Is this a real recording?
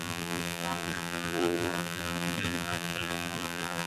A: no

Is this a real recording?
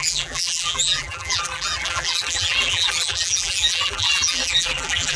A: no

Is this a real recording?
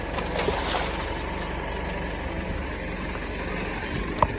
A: yes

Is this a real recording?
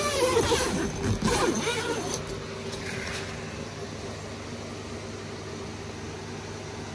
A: yes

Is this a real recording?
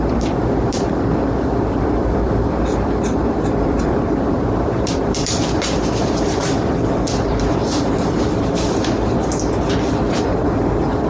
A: no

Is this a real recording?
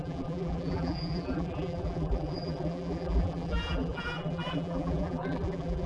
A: no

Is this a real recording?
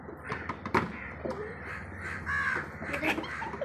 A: no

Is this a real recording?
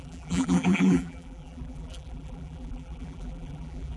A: no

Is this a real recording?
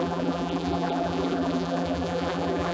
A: no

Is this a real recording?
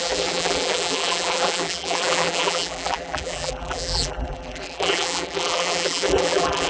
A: no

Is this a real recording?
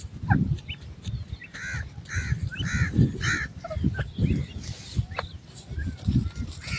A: yes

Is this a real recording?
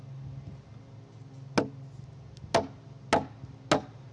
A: yes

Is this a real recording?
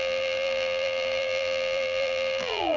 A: no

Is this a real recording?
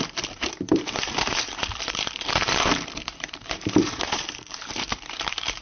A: no